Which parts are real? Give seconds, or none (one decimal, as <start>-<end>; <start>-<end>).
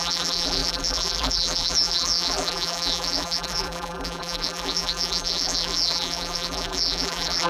none